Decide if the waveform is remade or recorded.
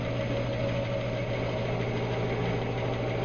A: recorded